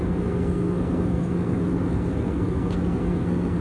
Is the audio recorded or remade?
remade